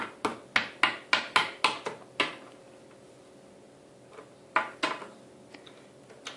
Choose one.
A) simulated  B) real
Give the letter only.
B